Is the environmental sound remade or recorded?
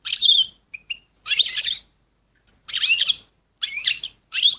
recorded